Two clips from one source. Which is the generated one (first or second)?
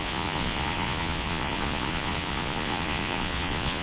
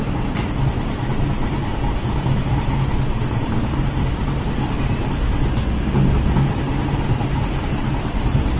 first